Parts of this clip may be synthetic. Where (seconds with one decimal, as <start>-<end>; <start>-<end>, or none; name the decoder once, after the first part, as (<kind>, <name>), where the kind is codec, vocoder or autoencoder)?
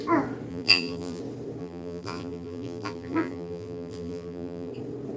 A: 0.5-1.2 (vocoder, BigVGAN v2); 1.6-4.7